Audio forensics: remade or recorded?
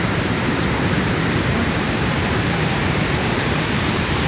remade